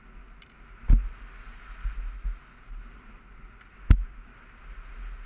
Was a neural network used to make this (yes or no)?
no